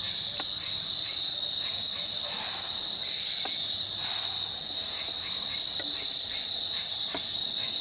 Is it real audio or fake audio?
real